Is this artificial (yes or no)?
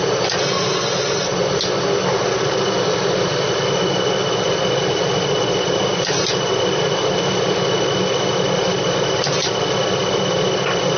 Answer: no